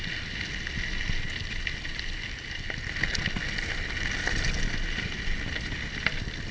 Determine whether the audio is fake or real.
real